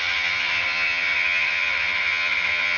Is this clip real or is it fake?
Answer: fake